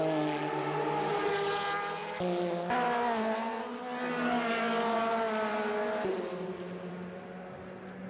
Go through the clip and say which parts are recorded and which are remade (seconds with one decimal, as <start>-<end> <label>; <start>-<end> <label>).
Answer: 0.0-8.1 recorded